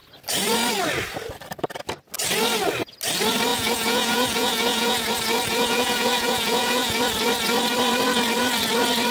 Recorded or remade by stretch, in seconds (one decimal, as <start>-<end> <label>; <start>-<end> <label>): 0.0-3.5 recorded; 3.5-5.1 remade; 5.1-5.5 recorded; 5.5-7.0 remade; 7.0-9.1 recorded